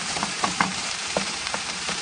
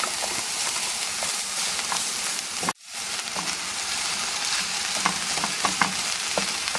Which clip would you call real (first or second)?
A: second